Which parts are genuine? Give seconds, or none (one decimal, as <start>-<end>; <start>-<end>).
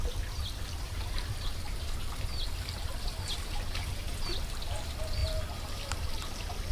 none